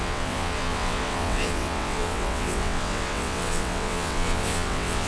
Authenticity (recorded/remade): remade